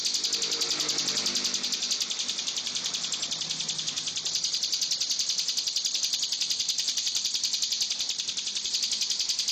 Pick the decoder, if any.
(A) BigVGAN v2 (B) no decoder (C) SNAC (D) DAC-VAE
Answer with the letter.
B